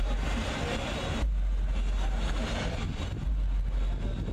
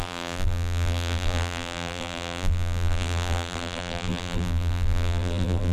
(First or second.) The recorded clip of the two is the first